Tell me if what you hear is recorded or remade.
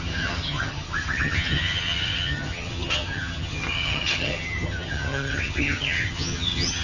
remade